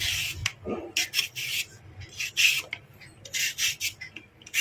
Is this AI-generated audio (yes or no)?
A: no